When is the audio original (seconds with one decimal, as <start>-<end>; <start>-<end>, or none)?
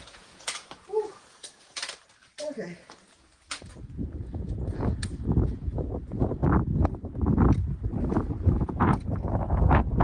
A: 1.8-2.4; 6.4-8.6